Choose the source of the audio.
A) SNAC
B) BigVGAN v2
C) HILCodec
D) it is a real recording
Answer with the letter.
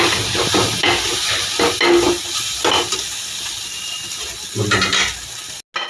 D